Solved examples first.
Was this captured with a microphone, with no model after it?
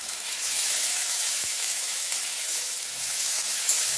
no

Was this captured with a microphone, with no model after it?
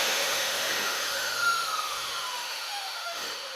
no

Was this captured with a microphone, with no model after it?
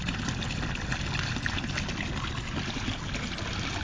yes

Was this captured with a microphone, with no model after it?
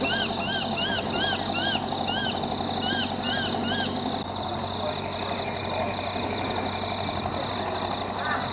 yes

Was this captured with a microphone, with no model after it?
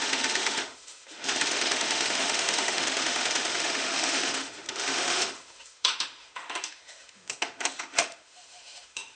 no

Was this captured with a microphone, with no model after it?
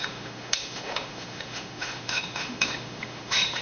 no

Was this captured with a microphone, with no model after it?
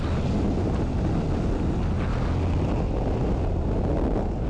yes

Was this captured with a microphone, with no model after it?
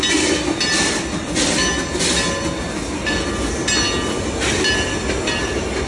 yes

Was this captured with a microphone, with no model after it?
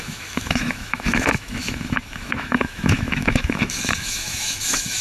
no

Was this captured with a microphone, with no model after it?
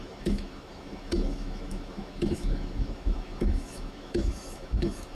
no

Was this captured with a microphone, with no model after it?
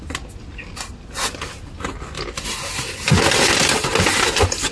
yes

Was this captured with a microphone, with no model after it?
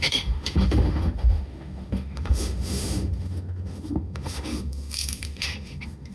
no